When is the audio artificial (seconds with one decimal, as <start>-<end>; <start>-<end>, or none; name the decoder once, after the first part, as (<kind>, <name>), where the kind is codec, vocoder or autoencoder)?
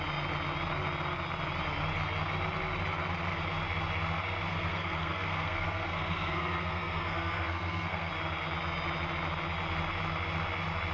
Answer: 4.5-8.1 (codec, SNAC)